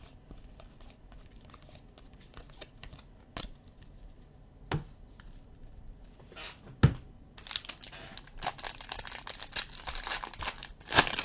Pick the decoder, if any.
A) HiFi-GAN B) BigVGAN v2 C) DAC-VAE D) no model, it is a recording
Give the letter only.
D